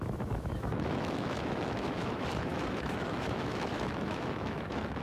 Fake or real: fake